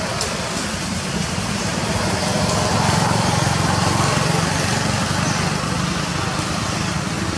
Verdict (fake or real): real